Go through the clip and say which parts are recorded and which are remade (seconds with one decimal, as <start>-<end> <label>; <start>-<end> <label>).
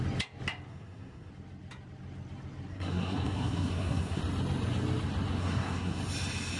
0.0-0.7 recorded; 0.7-1.3 remade; 1.3-2.7 recorded; 2.7-4.2 remade; 4.2-5.4 recorded; 5.4-6.0 remade; 6.0-6.6 recorded